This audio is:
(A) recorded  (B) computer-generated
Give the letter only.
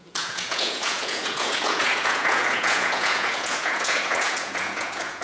B